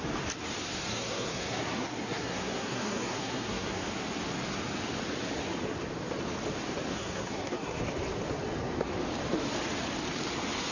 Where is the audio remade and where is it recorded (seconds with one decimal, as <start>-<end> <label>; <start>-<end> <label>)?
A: 0.0-0.9 recorded; 0.9-3.9 remade; 3.9-6.9 recorded; 6.9-7.8 remade; 7.8-10.7 recorded